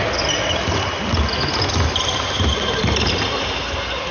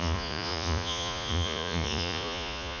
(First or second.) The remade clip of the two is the second